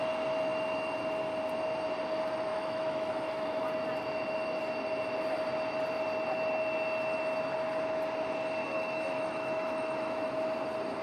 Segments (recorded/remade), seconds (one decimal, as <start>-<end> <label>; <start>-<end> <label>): 0.0-2.5 recorded; 2.5-3.6 remade; 3.6-8.6 recorded; 8.6-10.3 remade; 10.3-11.0 recorded